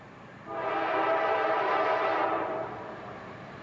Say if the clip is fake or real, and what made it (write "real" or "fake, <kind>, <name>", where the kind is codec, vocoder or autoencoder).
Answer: fake, vocoder, BigVGAN v2